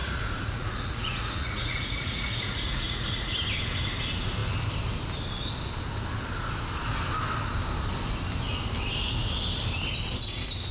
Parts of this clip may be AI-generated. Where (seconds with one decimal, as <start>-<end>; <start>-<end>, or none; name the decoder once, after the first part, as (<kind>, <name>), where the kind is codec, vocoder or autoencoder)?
0.0-3.3 (vocoder, Vocos)